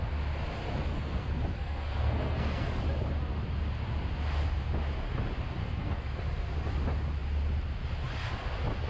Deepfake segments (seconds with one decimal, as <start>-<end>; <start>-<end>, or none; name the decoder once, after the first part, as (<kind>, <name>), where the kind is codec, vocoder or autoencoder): 0.9-2.8 (codec, SNAC); 5.6-6.2